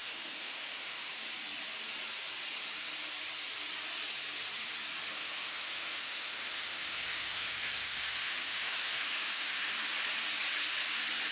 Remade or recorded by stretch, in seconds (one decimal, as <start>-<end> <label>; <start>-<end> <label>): 0.0-1.1 remade; 1.1-5.2 recorded; 5.2-9.7 remade; 9.7-11.3 recorded